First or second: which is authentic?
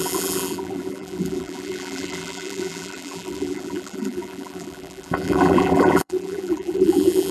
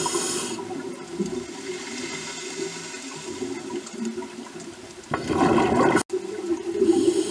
second